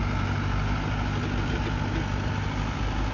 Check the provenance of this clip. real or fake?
real